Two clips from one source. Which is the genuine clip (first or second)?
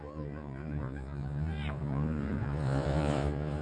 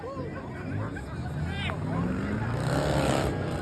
second